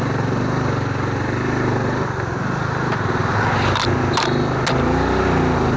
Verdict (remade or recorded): recorded